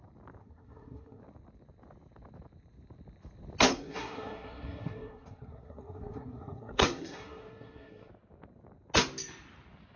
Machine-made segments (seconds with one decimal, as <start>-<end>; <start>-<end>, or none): 0.4-1.2; 3.7-8.1